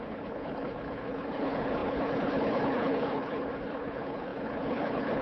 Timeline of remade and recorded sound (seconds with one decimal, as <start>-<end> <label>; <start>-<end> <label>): 0.0-5.2 remade